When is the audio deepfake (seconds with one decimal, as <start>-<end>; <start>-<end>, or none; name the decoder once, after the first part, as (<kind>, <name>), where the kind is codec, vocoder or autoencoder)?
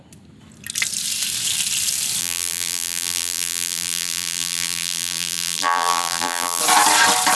2.2-6.6 (vocoder, BigVGAN v2)